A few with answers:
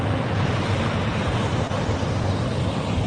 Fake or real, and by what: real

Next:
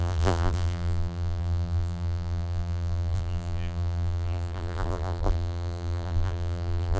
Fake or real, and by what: fake, vocoder, BigVGAN v2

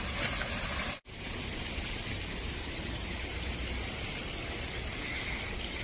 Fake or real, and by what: real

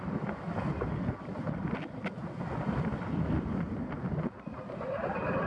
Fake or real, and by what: real